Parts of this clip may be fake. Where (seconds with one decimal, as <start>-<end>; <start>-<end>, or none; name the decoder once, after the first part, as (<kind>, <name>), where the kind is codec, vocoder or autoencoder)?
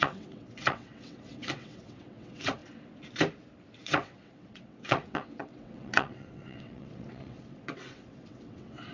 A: 0.0-2.6 (vocoder, WaveNeXt); 3.8-8.9